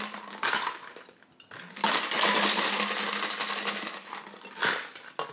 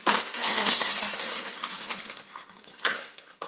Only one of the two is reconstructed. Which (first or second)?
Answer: second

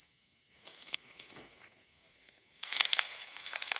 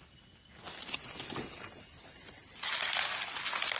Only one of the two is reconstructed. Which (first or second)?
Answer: first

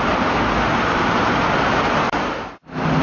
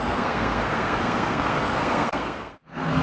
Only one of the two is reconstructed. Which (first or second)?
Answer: second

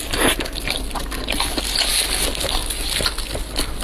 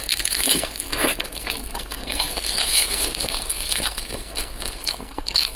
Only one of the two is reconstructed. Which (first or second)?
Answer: second